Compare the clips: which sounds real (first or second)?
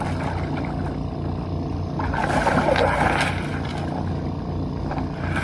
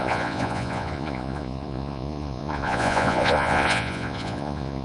first